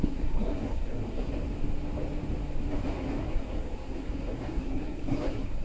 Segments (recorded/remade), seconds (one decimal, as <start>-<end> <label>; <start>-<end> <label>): 0.0-1.3 remade; 1.3-2.9 recorded; 2.9-5.6 remade